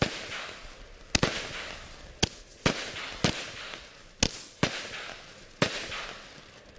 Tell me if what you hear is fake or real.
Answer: real